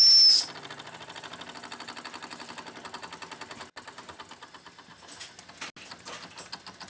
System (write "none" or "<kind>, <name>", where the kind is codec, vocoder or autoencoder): none